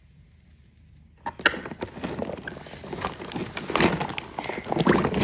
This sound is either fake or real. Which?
real